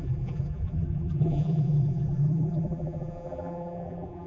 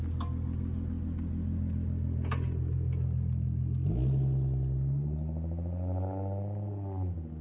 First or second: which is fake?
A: first